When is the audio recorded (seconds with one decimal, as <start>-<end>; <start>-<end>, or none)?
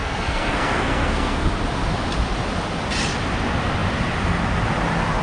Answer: 1.5-5.2